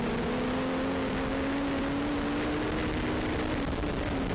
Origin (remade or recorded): recorded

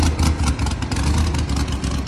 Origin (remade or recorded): recorded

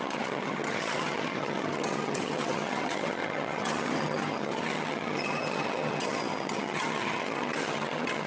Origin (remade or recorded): remade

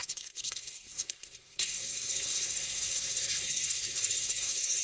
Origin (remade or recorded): remade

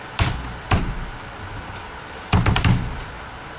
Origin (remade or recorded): remade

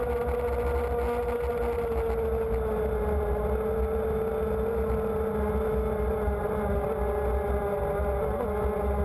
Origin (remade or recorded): recorded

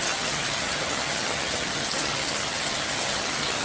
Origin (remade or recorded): remade